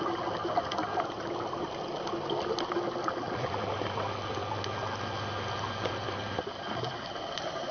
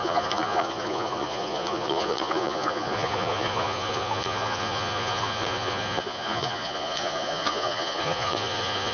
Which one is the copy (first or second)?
second